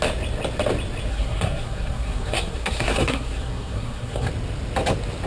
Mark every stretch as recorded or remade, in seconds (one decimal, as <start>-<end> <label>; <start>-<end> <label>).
0.0-1.1 recorded; 1.1-4.3 remade; 4.3-5.3 recorded